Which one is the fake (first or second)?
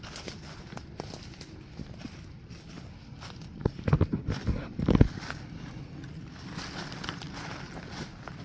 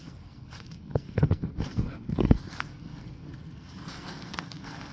second